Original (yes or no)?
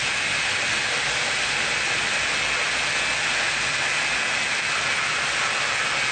yes